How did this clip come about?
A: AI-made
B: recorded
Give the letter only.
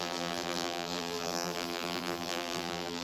A